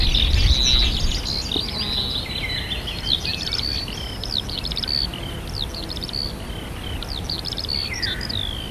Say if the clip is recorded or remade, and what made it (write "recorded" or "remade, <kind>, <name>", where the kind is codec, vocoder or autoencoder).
recorded